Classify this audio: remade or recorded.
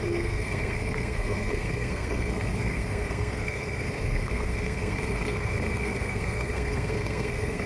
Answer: remade